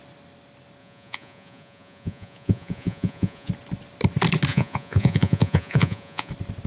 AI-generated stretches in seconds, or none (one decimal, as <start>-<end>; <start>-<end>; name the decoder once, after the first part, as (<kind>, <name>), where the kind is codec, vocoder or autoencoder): 0.8-3.5 (vocoder, Vocos); 4.5-6.3